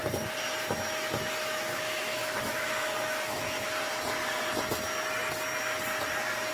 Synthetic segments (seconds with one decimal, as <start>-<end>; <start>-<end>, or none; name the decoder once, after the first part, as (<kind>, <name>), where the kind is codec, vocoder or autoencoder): 1.4-3.7 (autoencoder, DAC-VAE)

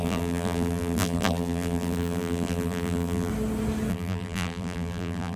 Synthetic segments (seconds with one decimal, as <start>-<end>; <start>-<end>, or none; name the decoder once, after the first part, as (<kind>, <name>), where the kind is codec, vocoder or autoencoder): 0.0-3.3 (vocoder, BigVGAN v2); 3.9-5.4